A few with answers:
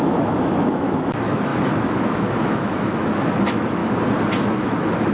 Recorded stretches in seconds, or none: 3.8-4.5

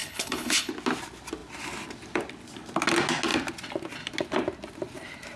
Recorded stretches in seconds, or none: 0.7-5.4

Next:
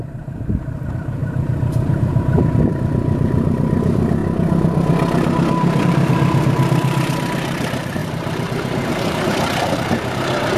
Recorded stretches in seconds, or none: 4.2-5.8

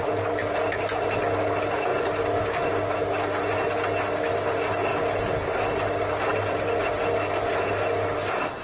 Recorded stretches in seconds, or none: 0.0-8.6